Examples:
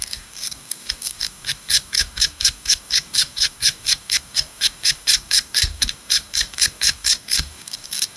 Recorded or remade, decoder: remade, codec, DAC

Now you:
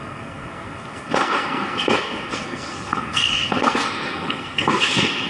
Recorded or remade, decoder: remade, codec, SNAC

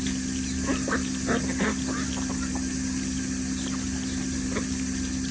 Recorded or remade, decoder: recorded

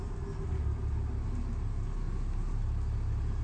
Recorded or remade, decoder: recorded